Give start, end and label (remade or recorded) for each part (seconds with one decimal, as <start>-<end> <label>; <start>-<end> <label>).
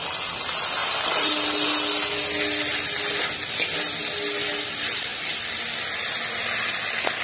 0.0-0.8 recorded; 0.8-1.3 remade; 1.3-7.2 recorded